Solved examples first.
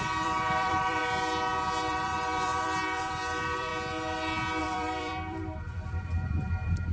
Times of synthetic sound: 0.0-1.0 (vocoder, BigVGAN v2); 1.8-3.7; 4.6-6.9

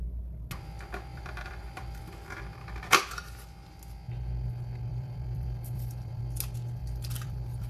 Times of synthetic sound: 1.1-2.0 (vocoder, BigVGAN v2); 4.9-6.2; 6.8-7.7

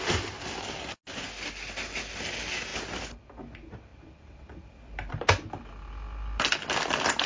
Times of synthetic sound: 2.7-3.4 (vocoder, BigVGAN v2); 3.9-5.1

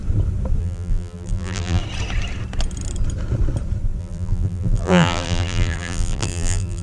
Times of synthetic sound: 0.6-1.8 (vocoder, BigVGAN v2); 4.0-6.8